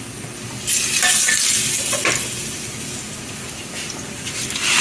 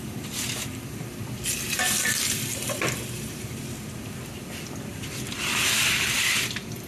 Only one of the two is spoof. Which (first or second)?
second